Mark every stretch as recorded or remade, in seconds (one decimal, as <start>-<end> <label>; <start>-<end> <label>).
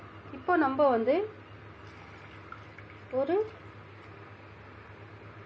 0.0-5.5 recorded